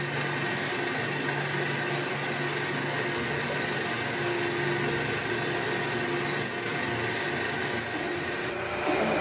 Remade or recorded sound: recorded